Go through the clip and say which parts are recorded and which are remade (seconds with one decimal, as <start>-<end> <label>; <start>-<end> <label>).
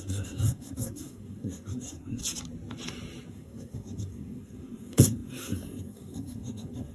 0.0-2.2 remade; 2.2-3.3 recorded; 3.3-6.9 remade